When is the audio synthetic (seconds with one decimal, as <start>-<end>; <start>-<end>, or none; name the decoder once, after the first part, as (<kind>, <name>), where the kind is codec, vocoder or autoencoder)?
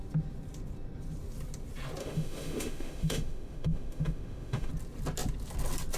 2.0-4.7 (autoencoder, DAC-VAE)